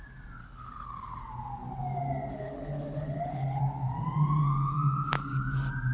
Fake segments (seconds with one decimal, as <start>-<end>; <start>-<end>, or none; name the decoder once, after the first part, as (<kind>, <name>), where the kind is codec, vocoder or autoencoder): 0.4-1.2 (codec, HILCodec); 2.3-3.6